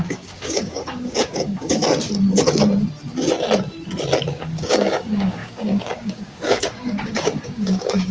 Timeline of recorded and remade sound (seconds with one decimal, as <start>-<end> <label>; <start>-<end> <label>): 0.0-1.8 remade; 1.8-4.3 recorded; 4.3-8.1 remade